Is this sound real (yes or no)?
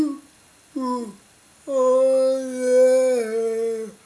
yes